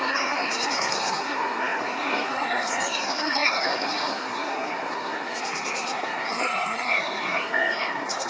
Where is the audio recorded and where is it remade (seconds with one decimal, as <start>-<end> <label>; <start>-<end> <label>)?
0.0-8.3 remade